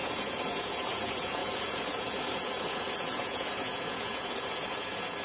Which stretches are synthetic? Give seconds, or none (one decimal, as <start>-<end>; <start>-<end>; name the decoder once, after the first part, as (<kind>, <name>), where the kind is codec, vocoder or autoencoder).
0.0-5.2 (vocoder, Vocos)